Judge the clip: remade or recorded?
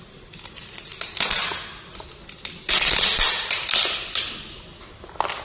recorded